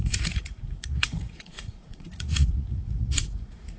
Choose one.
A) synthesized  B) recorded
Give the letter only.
A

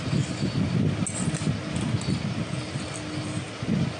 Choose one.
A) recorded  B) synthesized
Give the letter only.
A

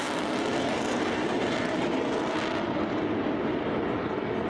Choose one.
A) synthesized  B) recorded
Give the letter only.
B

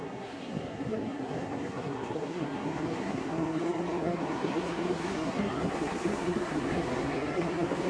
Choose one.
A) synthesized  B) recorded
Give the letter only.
A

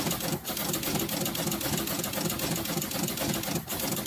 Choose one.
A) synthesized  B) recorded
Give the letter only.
B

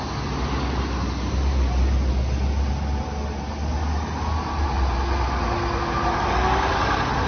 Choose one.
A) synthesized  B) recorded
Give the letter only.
B